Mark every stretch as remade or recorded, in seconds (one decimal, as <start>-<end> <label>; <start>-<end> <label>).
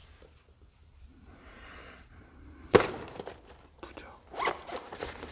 0.0-3.2 remade; 3.2-5.3 recorded